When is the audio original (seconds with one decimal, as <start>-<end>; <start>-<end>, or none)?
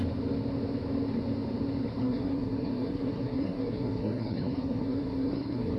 0.0-2.0